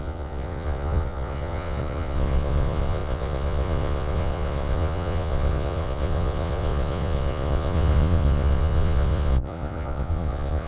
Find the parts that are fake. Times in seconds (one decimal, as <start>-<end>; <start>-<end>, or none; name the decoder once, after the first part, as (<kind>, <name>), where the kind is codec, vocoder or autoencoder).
0.0-10.7 (vocoder, Vocos)